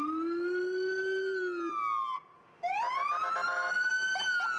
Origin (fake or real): real